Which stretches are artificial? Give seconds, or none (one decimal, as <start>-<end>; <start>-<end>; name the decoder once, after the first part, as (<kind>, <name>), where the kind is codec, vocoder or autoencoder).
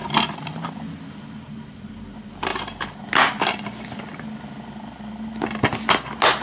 0.0-0.7 (vocoder, BigVGAN v2); 2.5-3.0